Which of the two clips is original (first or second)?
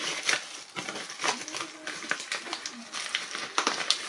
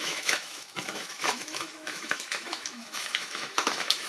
first